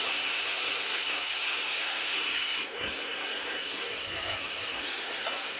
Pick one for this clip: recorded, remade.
remade